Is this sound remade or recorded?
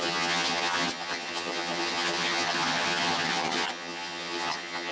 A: remade